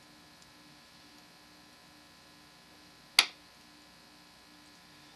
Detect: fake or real real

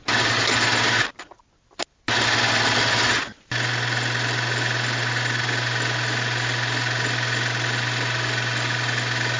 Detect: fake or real real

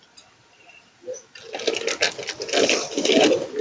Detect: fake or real real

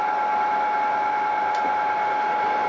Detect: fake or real real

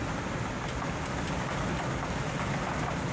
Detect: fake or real real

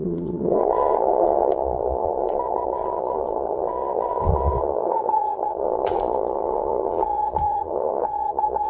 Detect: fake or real fake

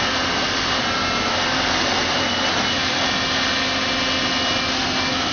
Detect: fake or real real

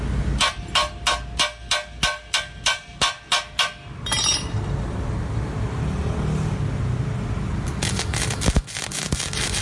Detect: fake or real real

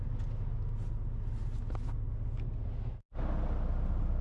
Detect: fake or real real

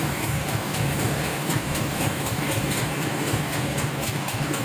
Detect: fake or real fake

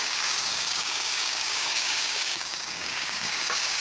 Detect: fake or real fake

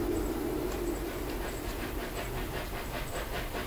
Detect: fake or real real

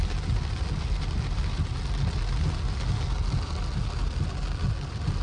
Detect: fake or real real